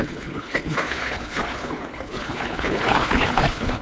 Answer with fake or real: fake